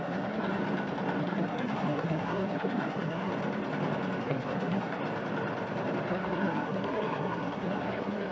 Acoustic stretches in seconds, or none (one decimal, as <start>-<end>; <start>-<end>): 0.6-1.2; 3.3-4.2; 5.0-6.1